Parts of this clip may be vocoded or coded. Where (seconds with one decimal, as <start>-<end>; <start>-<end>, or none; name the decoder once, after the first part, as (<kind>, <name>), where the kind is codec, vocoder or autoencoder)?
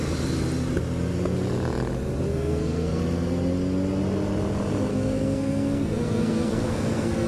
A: 2.3-3.0 (codec, SNAC); 4.9-7.3